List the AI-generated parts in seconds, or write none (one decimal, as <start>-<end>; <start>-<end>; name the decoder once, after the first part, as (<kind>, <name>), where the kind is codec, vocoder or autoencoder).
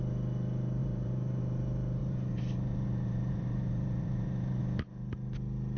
0.8-1.4 (vocoder, BigVGAN v2); 2.0-4.6